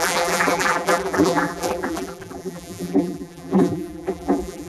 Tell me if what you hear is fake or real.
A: fake